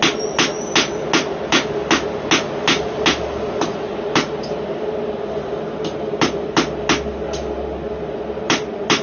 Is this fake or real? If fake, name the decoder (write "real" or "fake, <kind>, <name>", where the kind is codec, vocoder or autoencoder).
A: real